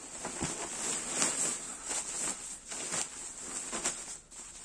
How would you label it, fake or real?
real